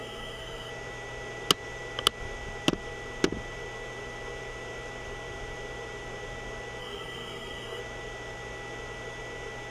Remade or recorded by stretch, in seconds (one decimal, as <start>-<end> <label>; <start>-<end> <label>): 0.0-0.7 remade; 0.7-6.8 recorded; 6.8-7.8 remade; 7.8-9.7 recorded